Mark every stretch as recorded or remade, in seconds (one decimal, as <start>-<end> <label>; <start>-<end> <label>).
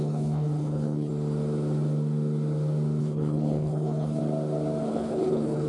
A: 0.0-1.1 remade; 1.1-3.0 recorded; 3.0-4.2 remade; 4.2-4.9 recorded; 4.9-5.7 remade